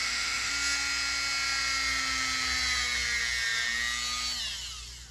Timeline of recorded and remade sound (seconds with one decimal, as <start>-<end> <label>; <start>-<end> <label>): 0.0-0.5 remade; 0.5-5.1 recorded